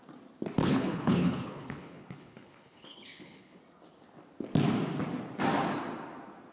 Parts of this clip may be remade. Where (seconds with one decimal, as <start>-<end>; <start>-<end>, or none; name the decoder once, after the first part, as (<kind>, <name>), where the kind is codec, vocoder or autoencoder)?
0.6-3.6 (codec, HILCodec)

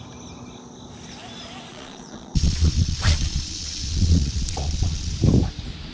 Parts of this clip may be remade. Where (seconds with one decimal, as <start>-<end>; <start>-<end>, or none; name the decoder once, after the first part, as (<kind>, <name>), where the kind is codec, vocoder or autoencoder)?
1.7-5.1 (vocoder, Vocos)